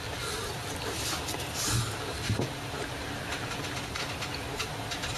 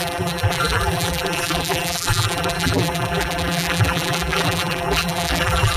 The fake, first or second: second